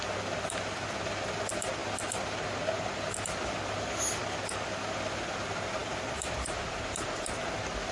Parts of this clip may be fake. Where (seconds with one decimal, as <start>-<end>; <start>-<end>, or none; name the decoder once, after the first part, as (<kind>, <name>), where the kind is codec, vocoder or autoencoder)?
none